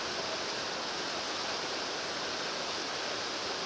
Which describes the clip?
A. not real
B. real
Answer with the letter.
B